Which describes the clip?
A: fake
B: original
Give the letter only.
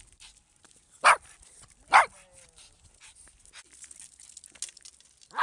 B